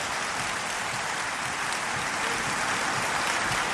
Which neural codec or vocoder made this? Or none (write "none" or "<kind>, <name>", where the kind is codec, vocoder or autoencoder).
none